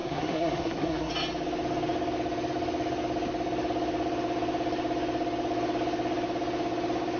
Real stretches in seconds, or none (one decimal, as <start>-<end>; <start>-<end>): 1.1-7.2